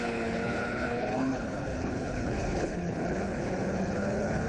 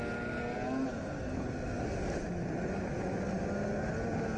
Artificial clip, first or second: first